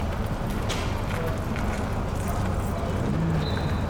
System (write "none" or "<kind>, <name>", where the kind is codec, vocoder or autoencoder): none